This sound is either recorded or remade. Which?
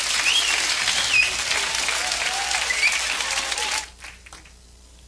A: recorded